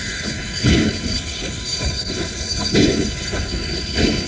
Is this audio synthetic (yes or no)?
yes